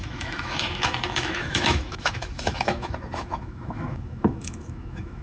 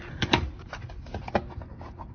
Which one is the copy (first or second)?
first